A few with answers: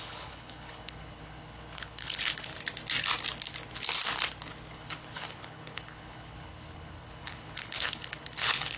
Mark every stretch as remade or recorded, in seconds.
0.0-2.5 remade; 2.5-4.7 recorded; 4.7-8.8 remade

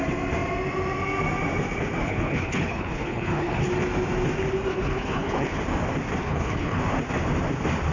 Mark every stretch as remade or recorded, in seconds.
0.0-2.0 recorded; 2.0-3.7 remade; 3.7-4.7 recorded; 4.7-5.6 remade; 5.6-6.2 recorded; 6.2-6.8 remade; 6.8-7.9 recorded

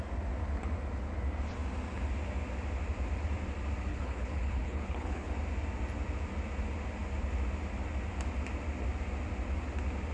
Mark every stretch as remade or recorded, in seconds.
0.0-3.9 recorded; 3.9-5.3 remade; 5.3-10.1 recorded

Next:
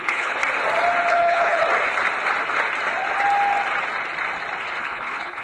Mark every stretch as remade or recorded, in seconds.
0.0-0.4 remade; 0.4-1.1 recorded; 1.1-1.6 remade; 1.6-4.8 recorded; 4.8-5.4 remade

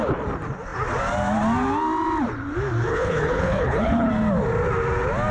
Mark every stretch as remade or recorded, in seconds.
0.0-2.9 recorded; 2.9-4.1 remade; 4.1-5.3 recorded

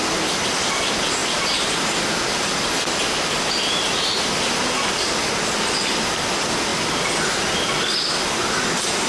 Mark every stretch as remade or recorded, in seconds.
0.0-9.1 recorded